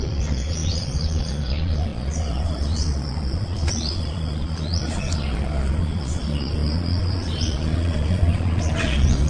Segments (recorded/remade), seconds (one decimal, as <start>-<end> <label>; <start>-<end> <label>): 0.0-9.3 remade